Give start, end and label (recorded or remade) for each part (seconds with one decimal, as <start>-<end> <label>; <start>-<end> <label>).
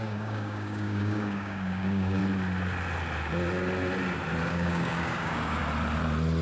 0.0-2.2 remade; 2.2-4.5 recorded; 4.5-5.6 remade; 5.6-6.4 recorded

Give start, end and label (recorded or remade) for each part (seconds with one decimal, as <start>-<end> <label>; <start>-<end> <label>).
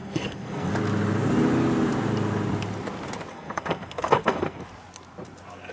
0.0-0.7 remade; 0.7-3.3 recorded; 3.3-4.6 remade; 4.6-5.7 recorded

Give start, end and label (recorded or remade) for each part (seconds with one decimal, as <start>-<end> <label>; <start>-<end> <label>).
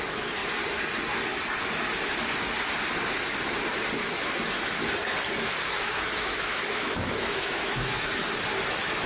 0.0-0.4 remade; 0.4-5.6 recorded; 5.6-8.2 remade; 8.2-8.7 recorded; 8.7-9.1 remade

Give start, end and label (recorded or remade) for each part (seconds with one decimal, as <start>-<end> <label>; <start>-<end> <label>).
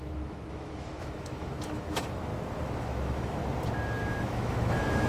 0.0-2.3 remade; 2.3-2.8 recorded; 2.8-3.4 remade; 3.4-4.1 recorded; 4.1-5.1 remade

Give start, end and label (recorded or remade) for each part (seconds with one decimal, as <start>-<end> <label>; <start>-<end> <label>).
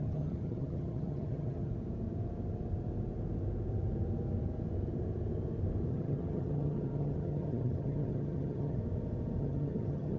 0.0-1.7 remade; 1.7-5.9 recorded; 5.9-8.8 remade; 8.8-9.4 recorded; 9.4-10.2 remade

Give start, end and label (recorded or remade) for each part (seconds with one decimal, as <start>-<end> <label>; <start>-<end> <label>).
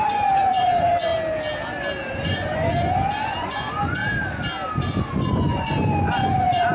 0.0-1.1 remade; 1.1-2.1 recorded; 2.1-4.0 remade; 4.0-4.8 recorded; 4.8-6.7 remade